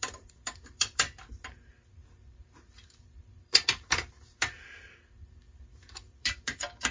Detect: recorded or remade remade